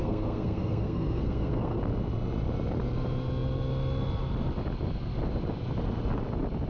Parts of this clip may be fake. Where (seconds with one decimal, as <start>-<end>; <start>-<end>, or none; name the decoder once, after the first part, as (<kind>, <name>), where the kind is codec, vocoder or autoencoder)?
0.0-1.8 (codec, SNAC)